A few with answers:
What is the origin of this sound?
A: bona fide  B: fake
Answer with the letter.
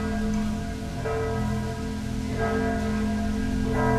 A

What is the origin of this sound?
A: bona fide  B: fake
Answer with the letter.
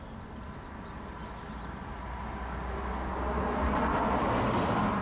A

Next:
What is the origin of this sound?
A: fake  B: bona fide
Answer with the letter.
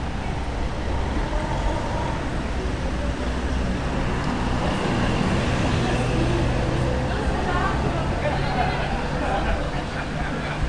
B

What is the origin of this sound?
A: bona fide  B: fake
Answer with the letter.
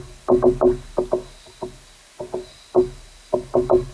A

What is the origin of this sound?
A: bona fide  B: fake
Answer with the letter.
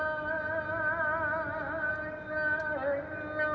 A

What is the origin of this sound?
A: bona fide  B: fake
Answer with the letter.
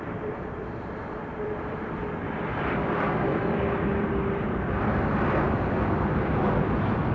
B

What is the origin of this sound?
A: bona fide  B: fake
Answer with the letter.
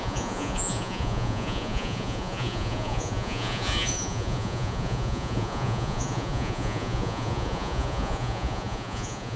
B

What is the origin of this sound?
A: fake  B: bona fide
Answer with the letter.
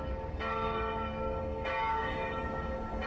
A